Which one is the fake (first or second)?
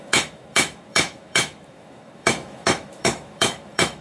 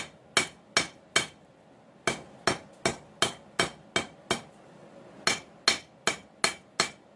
first